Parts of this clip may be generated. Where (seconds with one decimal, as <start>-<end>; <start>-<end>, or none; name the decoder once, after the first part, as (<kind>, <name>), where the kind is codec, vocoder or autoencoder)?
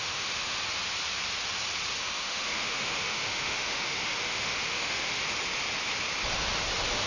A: 0.0-0.6 (autoencoder, DAC-VAE); 2.0-5.2